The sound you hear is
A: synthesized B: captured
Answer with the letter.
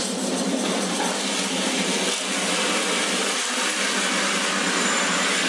B